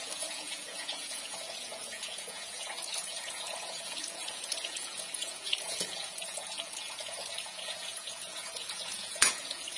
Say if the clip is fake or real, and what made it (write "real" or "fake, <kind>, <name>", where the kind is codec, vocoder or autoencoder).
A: fake, vocoder, Vocos